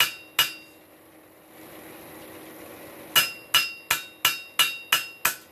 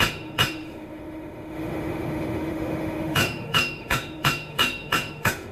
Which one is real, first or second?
first